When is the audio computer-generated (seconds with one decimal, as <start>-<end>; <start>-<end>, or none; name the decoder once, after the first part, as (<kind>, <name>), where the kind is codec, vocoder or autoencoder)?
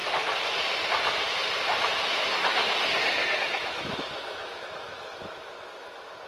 2.1-2.6 (autoencoder, DAC-VAE); 3.4-6.3